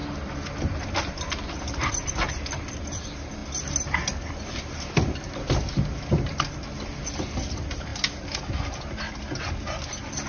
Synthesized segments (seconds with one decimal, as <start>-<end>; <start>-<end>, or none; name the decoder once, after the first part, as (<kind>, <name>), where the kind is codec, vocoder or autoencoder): none